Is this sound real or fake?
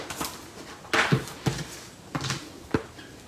real